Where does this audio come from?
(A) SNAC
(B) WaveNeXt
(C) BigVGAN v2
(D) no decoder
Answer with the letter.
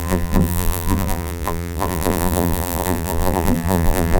C